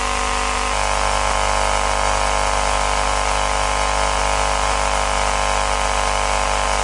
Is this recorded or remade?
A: recorded